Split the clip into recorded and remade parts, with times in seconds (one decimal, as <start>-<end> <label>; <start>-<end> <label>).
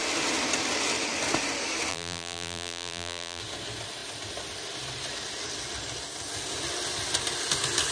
0.0-1.9 recorded; 1.9-3.4 remade; 3.4-7.9 recorded